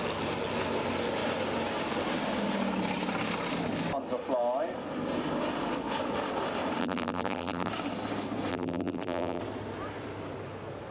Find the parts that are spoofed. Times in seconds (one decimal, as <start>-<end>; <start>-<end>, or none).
6.8-7.7; 8.5-9.4